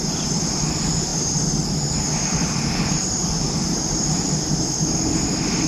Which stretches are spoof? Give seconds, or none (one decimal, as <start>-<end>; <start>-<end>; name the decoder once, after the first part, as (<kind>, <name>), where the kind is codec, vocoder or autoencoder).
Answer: none

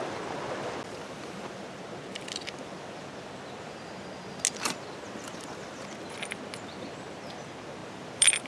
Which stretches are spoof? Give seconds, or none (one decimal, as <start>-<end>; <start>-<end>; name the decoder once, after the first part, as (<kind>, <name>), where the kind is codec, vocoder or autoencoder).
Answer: 7.8-8.5 (vocoder, BigVGAN v2)

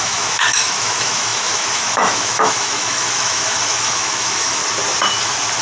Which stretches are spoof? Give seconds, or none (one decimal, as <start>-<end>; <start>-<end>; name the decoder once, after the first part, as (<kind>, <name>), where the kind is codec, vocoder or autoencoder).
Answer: 0.0-4.6 (autoencoder, DAC-VAE)

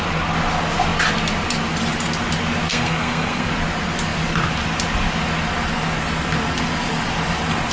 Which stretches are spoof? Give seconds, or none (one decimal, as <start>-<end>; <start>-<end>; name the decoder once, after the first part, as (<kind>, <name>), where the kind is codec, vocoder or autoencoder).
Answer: 2.7-3.5 (codec, SNAC)

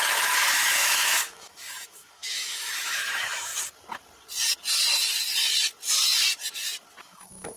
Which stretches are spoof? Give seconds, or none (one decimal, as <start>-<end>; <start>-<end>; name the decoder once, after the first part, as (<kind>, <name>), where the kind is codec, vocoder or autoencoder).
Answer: 0.0-3.5 (autoencoder, DAC-VAE); 7.0-7.6

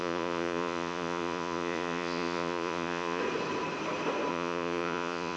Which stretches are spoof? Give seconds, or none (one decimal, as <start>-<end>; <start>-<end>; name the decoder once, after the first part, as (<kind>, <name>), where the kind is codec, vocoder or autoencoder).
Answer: 0.0-3.2 (vocoder, Vocos); 4.3-5.4

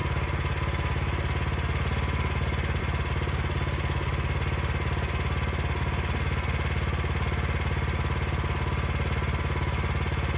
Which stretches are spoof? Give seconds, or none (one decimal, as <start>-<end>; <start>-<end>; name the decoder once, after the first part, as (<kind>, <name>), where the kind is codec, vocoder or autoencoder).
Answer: none